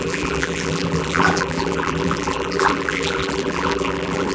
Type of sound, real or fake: fake